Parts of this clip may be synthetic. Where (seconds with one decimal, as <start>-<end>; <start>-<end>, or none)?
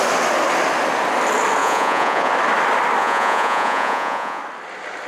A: 1.6-2.3; 3.0-4.4